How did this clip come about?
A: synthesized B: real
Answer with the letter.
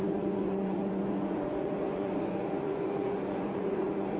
A